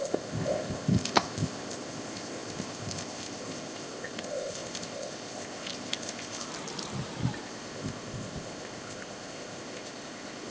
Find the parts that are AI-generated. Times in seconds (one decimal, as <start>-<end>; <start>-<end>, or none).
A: 0.0-6.5; 7.4-10.5